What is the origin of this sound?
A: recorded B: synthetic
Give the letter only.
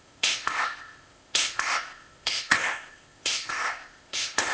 B